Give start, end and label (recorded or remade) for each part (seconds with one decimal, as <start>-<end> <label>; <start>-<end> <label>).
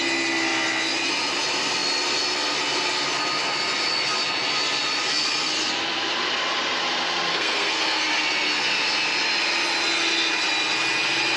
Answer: 0.0-7.3 recorded; 7.3-8.0 remade; 8.0-11.4 recorded